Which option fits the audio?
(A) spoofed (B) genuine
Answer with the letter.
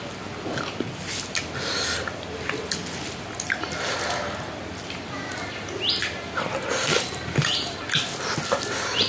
B